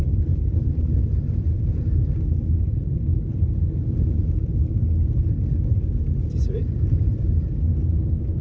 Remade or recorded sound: recorded